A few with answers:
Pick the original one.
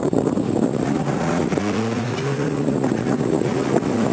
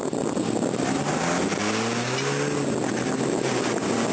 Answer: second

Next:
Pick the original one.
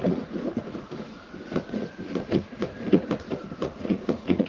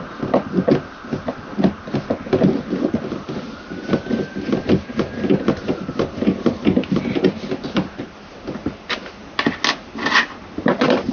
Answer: second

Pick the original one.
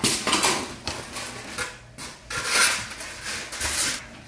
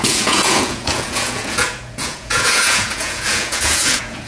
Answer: first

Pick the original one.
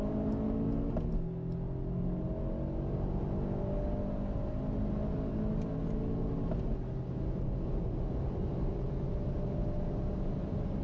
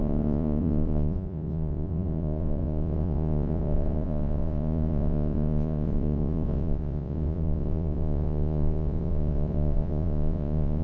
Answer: first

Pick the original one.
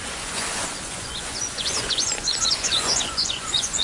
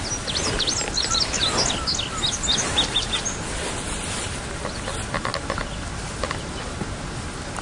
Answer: second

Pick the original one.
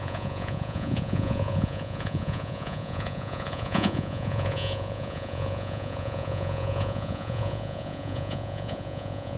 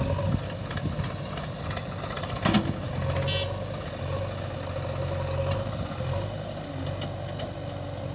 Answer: second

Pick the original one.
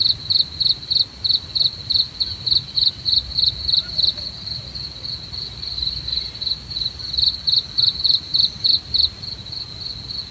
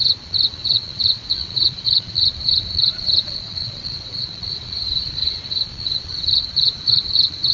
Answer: first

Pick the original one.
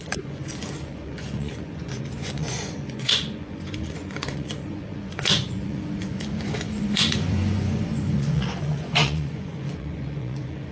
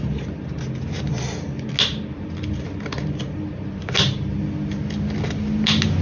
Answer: second